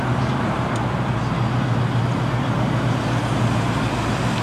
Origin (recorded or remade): recorded